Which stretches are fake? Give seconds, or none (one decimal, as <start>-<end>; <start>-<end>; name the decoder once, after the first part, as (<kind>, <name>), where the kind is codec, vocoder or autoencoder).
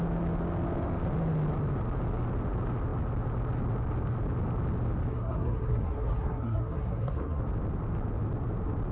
5.1-7.4 (codec, SNAC)